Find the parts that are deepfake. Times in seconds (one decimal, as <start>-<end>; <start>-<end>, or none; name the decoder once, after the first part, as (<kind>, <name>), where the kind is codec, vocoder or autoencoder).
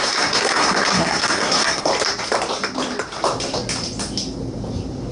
0.0-1.9 (codec, SNAC)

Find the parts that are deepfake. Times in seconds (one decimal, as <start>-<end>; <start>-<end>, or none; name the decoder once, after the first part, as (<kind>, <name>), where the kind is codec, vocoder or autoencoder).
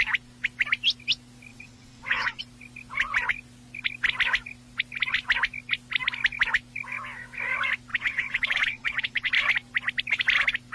1.5-2.4 (vocoder, WaveNeXt); 7.9-9.3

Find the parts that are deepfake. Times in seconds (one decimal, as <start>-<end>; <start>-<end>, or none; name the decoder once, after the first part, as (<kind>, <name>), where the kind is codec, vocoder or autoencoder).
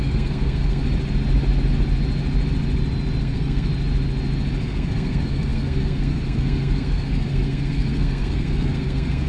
0.0-0.8 (codec, SNAC); 3.2-3.7; 4.6-9.3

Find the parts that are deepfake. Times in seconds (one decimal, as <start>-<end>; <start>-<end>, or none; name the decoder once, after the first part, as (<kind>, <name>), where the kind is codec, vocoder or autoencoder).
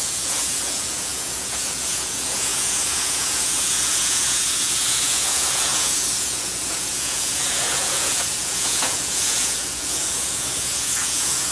0.0-11.5 (vocoder, Vocos)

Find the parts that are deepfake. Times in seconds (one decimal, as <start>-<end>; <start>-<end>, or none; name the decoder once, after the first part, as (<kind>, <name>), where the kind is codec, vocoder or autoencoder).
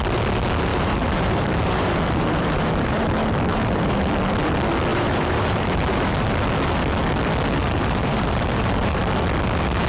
0.7-3.1 (vocoder, BigVGAN v2); 3.5-4.0; 4.9-6.3; 7.6-9.0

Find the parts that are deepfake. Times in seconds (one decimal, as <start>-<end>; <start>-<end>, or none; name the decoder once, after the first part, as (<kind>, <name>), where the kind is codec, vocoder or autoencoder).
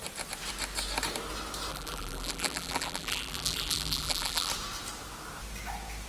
1.7-4.5 (vocoder, BigVGAN v2)